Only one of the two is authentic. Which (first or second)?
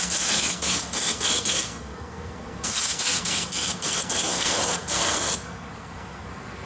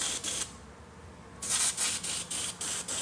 second